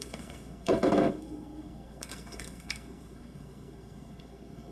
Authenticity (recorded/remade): remade